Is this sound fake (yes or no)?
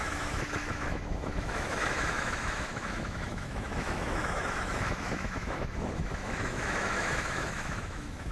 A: yes